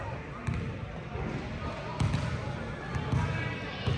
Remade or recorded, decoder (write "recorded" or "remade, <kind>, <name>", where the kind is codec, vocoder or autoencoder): recorded